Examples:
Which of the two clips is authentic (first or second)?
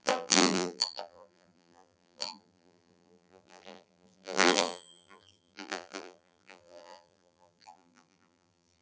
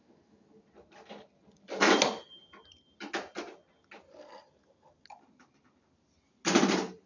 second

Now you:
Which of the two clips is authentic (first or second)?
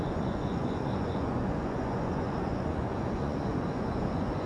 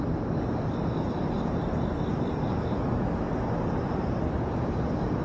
second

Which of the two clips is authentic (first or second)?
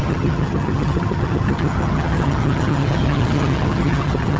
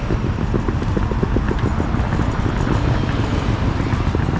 second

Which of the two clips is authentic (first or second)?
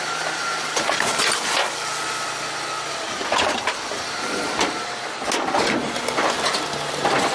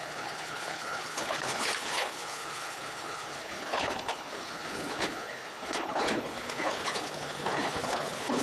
first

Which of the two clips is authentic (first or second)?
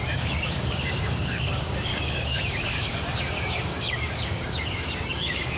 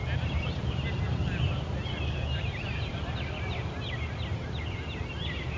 second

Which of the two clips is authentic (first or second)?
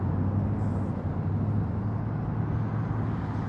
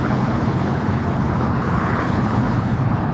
first